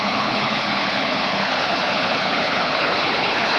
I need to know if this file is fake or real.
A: fake